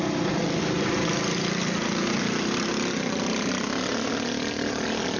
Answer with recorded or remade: recorded